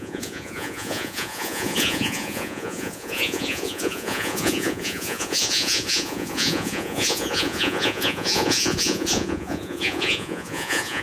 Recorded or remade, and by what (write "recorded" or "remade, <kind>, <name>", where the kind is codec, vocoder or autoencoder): remade, vocoder, Vocos